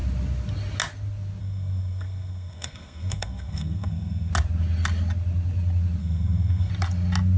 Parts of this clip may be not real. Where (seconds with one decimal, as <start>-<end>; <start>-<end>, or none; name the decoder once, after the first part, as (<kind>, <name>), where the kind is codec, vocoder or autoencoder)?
1.4-4.3 (codec, SNAC); 6.0-6.7